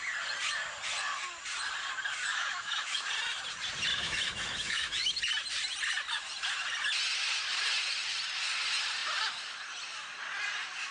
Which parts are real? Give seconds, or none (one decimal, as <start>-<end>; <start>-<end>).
0.0-2.3; 3.1-3.9; 5.2-10.9